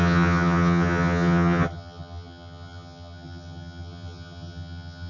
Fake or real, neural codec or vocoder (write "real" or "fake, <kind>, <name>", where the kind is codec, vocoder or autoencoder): fake, vocoder, HiFi-GAN